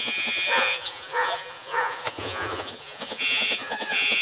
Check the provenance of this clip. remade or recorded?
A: remade